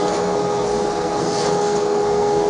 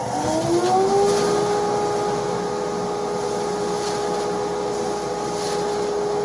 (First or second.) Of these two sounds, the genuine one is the second